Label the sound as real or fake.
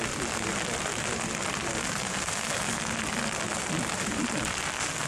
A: real